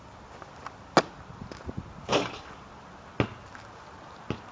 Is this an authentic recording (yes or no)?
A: yes